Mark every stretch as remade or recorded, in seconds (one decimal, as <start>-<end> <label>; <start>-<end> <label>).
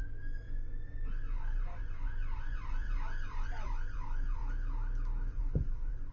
0.0-4.4 remade; 4.4-5.3 recorded; 5.3-6.1 remade